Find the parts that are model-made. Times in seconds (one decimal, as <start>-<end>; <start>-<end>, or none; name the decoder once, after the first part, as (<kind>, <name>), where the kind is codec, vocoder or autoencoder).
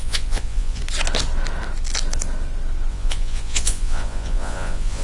0.0-0.8 (vocoder, Vocos); 2.9-5.0